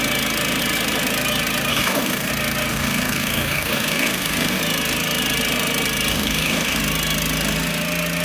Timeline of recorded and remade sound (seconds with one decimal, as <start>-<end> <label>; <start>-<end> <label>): 0.0-1.7 recorded; 1.7-2.3 remade; 2.3-2.7 recorded; 2.7-4.6 remade; 4.6-6.1 recorded; 6.1-6.8 remade; 6.8-8.2 recorded